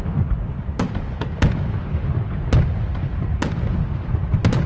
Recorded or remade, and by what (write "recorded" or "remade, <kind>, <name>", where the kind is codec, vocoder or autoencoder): recorded